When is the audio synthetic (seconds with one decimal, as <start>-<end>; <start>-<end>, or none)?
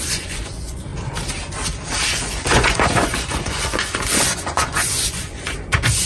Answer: 0.0-0.9; 2.1-6.1